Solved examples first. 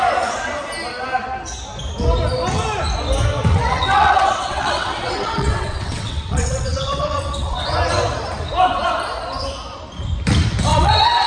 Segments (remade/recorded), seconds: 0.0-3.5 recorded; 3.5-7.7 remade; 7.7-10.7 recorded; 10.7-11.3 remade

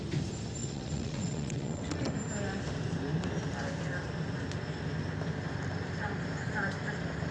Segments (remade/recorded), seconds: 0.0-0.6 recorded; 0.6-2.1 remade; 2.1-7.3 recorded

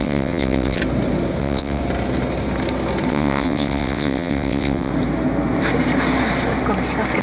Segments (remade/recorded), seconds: 0.0-0.8 remade; 0.8-1.4 recorded; 1.4-1.8 remade; 1.8-3.1 recorded; 3.1-4.9 remade; 4.9-7.2 recorded